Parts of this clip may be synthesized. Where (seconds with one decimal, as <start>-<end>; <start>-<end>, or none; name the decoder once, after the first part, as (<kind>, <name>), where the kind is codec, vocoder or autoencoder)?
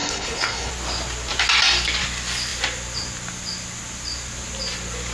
0.0-0.7 (codec, HILCodec)